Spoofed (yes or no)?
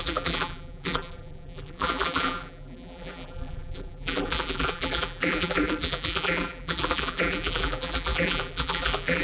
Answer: yes